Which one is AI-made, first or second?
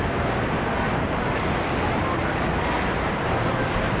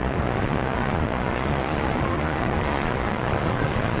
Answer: second